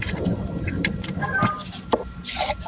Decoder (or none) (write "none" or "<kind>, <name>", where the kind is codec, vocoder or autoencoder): none